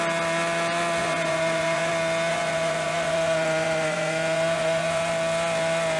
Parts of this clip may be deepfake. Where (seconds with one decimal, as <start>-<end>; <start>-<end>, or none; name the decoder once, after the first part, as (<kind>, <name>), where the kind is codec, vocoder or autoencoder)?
1.0-1.9 (vocoder, Vocos); 2.3-5.1